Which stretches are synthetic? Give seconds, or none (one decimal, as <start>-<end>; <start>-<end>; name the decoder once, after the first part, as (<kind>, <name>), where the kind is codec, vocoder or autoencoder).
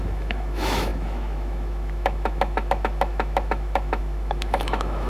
0.0-5.1 (autoencoder, DAC-VAE)